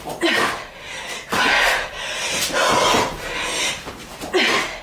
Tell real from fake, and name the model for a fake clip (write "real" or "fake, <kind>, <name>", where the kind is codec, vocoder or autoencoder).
real